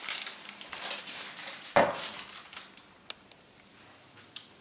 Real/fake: real